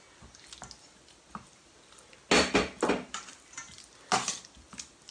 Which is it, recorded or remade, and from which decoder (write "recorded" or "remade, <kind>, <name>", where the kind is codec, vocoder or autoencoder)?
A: recorded